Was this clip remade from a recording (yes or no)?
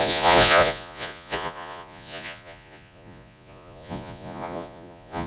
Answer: yes